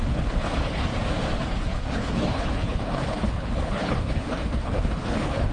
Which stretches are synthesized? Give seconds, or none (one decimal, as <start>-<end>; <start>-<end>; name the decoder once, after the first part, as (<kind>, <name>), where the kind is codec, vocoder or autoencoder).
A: 0.0-0.9 (codec, HILCodec); 1.4-5.5